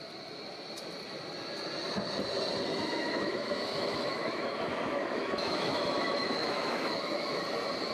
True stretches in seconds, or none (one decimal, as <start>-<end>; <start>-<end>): 0.0-2.7; 7.4-7.9